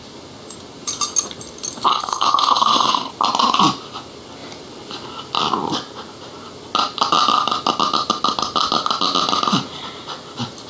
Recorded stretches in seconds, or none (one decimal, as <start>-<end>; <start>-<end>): 0.0-1.9; 3.1-10.7